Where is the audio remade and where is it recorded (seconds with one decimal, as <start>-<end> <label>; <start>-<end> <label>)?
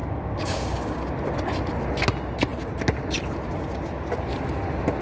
0.0-1.0 remade; 1.0-5.0 recorded